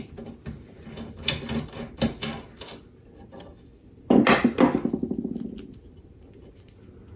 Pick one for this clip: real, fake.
real